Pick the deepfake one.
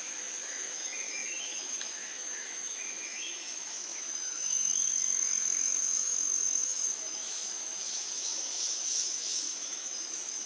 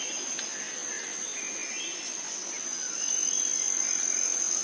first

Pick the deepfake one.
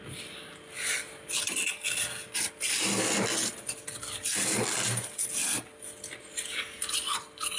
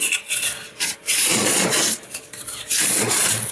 second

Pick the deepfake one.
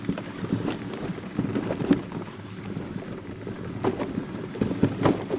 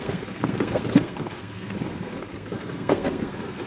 second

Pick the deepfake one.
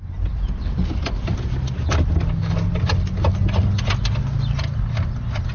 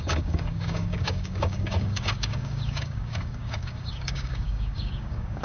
second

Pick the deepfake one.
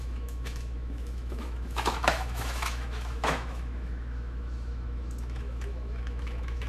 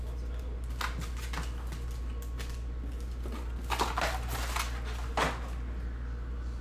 first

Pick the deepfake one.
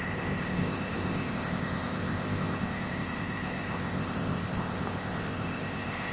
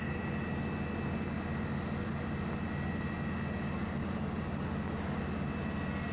first